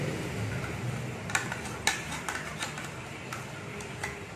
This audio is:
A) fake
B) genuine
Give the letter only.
B